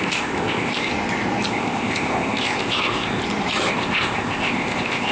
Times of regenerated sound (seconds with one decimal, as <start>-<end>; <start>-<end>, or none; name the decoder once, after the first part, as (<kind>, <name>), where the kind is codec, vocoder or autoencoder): 0.0-0.9 (codec, ZipCodec); 1.5-3.2; 3.7-5.1